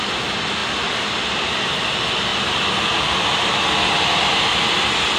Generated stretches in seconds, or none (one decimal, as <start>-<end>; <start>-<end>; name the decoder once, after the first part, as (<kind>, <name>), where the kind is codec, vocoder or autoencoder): none

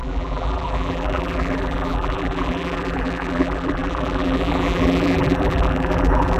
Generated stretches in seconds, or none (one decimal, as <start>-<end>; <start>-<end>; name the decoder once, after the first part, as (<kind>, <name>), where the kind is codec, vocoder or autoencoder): 0.0-6.4 (vocoder, BigVGAN v2)

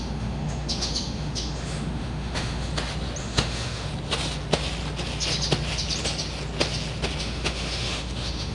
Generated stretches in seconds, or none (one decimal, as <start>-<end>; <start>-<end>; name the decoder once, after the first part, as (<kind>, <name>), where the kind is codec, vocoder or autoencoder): 0.0-2.7 (autoencoder, DAC-VAE); 3.2-3.9; 7.2-8.5

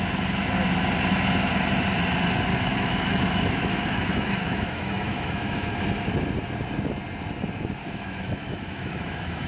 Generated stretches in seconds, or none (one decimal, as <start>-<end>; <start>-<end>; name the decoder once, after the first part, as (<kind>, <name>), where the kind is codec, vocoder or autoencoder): 2.5-5.8 (autoencoder, DAC-VAE); 7.8-9.5

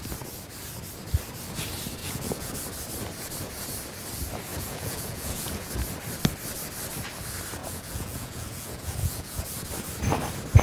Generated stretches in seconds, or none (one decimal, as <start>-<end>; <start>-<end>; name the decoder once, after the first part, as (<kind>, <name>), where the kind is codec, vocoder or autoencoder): 2.0-2.5 (vocoder, Vocos); 4.5-5.7; 7.6-9.4